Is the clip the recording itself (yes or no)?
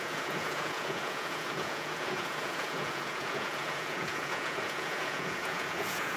no